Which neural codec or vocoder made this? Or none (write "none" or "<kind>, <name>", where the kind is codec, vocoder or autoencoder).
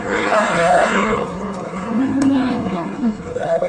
codec, SNAC